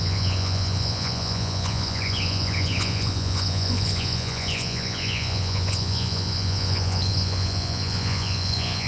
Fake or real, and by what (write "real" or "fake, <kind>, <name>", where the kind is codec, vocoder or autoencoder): fake, vocoder, Vocos